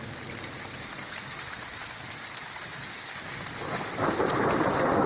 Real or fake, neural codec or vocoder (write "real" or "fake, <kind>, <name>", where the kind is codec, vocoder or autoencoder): real